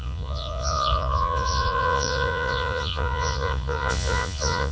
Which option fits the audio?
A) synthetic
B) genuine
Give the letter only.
A